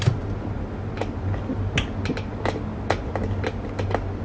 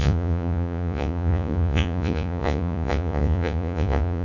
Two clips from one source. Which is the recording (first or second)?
first